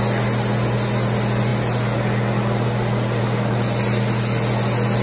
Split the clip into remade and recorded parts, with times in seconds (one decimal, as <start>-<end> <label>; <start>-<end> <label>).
0.0-5.0 recorded